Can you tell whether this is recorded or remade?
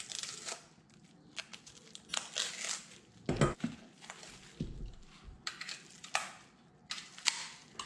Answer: recorded